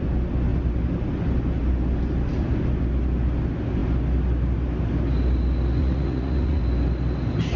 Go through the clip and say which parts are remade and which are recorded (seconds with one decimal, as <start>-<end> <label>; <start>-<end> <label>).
0.0-5.8 recorded; 5.8-6.6 remade; 6.6-7.6 recorded